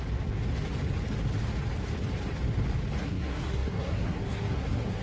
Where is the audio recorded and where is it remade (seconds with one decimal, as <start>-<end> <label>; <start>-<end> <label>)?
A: 0.0-3.0 recorded; 3.0-5.0 remade